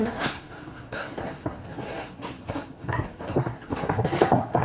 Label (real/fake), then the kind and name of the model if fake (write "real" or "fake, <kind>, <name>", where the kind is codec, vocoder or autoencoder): fake, codec, SNAC